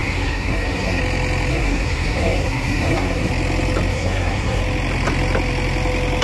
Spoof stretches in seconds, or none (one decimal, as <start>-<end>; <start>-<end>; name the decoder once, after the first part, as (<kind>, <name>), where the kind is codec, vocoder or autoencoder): 0.0-1.0 (codec, SNAC); 1.5-3.3; 3.9-4.6